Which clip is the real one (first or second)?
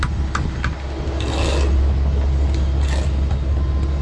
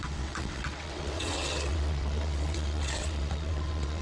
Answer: first